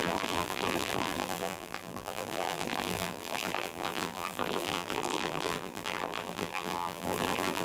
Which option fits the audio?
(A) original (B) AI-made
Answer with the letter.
B